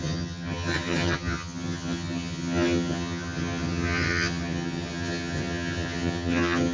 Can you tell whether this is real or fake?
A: fake